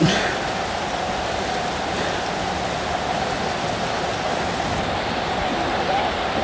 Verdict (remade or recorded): recorded